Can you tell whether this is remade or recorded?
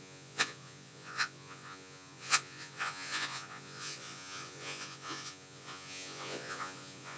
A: remade